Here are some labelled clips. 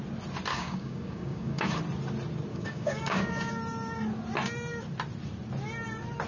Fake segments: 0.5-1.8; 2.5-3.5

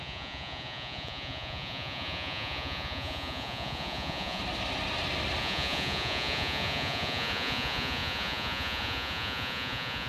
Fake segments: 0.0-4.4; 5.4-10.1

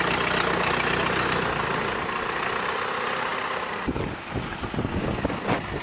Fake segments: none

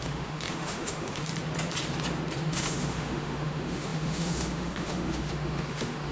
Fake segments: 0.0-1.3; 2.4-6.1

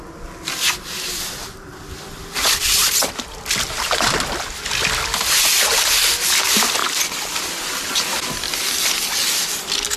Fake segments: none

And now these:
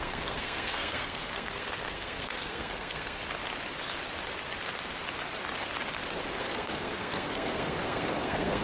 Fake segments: 0.0-3.2; 6.4-8.6

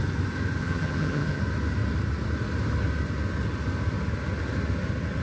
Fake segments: 0.6-1.4

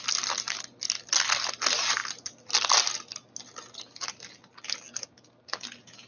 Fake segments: none